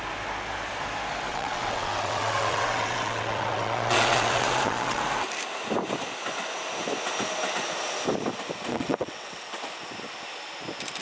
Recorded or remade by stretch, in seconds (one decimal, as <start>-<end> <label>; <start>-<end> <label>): 0.0-1.3 recorded; 1.3-5.0 remade; 5.0-8.7 recorded; 8.7-9.6 remade; 9.6-11.0 recorded